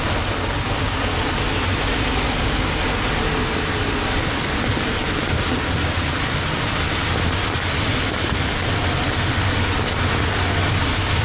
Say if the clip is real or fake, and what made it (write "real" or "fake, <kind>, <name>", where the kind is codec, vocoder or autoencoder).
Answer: real